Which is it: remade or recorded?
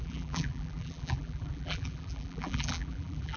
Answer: remade